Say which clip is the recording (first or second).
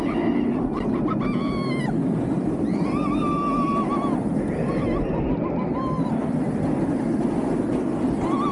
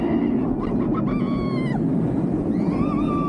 second